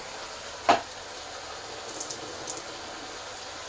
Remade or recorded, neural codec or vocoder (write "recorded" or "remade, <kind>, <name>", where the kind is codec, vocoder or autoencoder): recorded